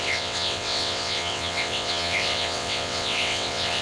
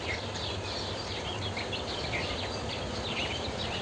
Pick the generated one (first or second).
first